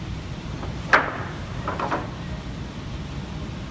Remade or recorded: remade